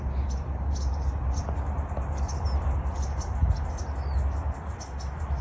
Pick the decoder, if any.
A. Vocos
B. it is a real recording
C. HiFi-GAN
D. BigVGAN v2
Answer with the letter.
B